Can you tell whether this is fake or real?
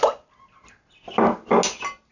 real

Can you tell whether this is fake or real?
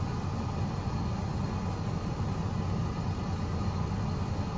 real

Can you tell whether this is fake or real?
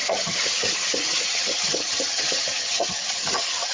fake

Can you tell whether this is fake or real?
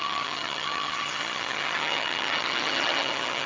fake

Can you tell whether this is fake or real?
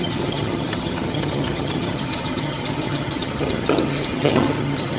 fake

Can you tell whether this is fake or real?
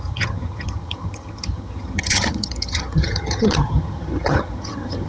fake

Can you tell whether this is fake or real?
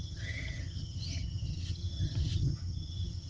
fake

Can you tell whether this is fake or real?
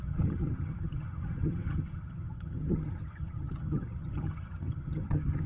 fake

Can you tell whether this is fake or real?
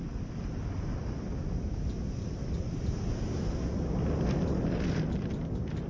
real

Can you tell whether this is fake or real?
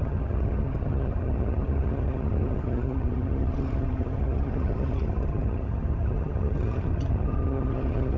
fake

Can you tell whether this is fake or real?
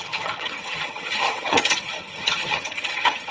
fake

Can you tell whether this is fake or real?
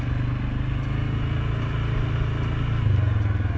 real